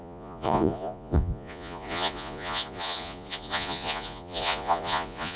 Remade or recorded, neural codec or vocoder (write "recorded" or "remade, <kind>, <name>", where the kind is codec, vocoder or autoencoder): remade, vocoder, Vocos